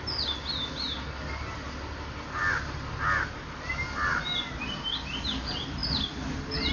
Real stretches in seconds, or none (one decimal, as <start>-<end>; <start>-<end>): 0.0-6.7